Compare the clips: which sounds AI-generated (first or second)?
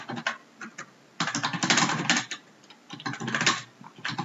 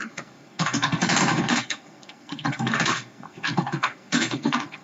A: second